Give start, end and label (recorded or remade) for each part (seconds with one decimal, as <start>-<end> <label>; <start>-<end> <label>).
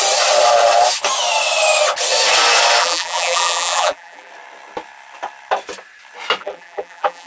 0.0-2.8 recorded; 2.8-4.3 remade; 4.3-6.4 recorded; 6.4-7.3 remade